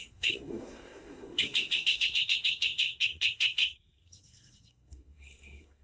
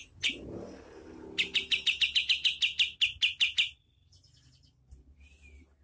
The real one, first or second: second